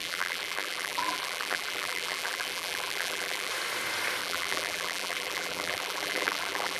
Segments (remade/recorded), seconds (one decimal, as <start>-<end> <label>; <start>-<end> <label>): 0.0-3.5 remade; 3.5-4.2 recorded; 4.2-6.8 remade